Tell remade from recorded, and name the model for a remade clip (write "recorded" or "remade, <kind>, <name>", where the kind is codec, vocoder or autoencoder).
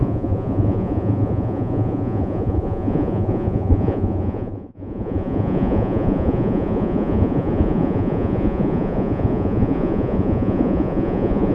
remade, vocoder, Vocos